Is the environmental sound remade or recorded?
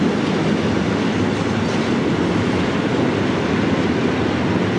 recorded